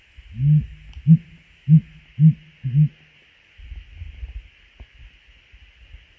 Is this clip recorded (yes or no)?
yes